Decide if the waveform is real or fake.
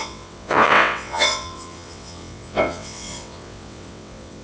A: fake